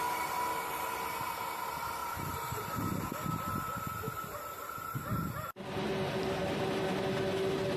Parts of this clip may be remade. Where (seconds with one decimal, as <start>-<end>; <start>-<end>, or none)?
2.0-3.0